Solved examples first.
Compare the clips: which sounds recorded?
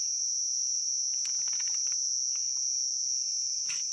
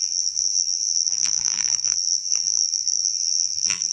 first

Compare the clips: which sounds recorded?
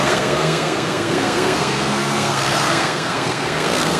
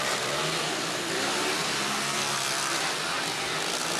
second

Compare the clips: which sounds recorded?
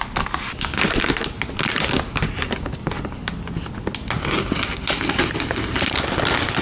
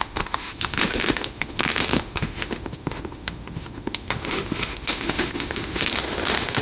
first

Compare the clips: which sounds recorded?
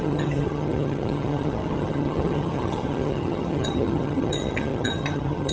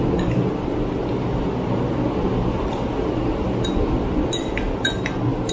second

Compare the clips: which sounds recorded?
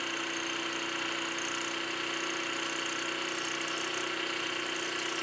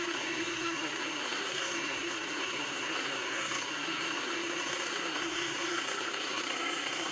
first